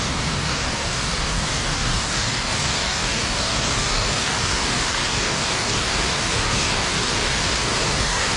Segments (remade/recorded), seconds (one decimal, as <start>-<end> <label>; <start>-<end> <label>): 0.0-8.4 remade